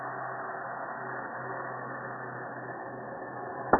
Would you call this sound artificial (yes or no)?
no